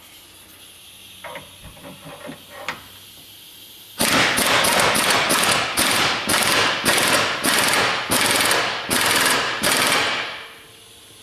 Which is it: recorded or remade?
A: recorded